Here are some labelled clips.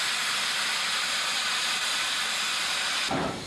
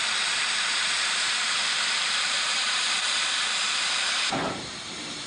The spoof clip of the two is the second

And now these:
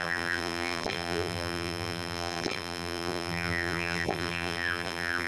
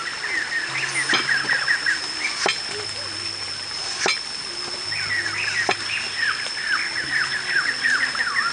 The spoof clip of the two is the first